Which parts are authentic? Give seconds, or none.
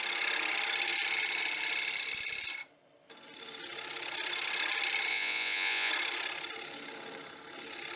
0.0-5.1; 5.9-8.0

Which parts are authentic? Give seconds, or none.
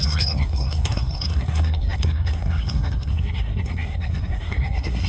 none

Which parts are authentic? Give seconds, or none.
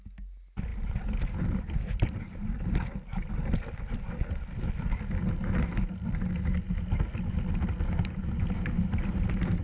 0.0-9.6